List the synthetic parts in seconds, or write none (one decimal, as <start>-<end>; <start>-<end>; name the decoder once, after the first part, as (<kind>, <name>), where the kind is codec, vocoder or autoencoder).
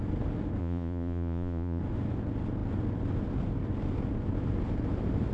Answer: 0.6-1.8 (vocoder, Vocos)